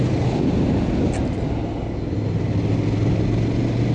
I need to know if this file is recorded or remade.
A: recorded